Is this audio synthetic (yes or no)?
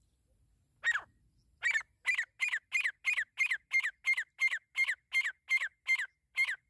no